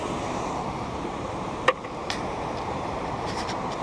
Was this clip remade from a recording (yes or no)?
yes